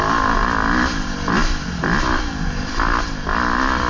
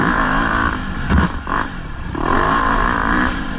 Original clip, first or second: first